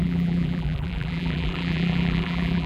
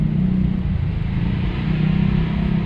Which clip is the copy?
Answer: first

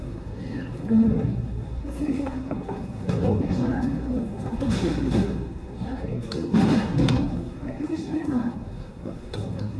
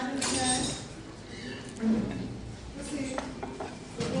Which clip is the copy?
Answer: first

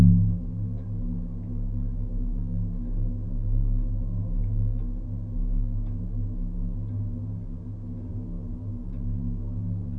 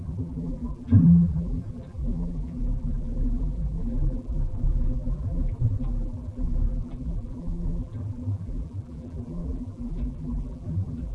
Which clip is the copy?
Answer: second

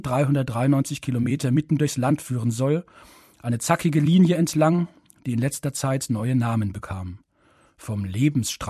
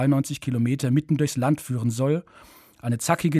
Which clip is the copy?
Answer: first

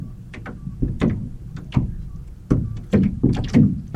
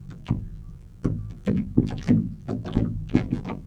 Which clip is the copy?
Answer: second